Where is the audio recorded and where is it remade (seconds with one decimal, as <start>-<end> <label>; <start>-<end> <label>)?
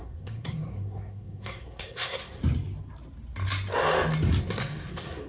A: 0.0-2.4 remade; 2.4-4.4 recorded; 4.4-5.3 remade